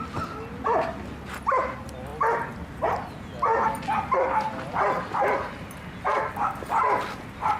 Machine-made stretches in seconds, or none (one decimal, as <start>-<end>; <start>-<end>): none